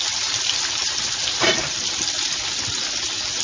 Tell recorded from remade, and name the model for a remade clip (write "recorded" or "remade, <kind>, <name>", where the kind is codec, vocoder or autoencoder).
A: remade, vocoder, BigVGAN v2